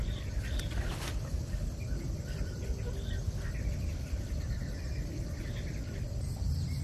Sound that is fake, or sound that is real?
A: real